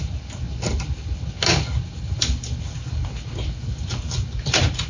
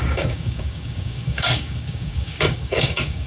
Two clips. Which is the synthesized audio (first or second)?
second